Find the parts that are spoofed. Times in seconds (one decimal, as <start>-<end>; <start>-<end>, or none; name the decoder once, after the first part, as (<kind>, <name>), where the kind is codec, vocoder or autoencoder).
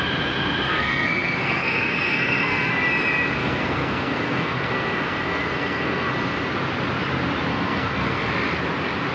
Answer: 0.7-2.7 (codec, SNAC); 3.4-6.1; 7.5-8.3